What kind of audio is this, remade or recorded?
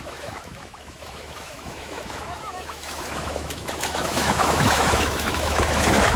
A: remade